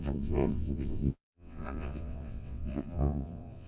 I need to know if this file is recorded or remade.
remade